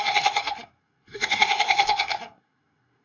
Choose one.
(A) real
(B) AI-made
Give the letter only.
B